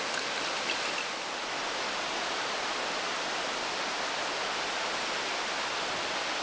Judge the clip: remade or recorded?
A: recorded